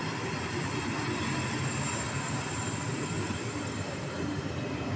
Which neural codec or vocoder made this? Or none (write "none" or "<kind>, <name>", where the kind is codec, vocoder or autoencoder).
none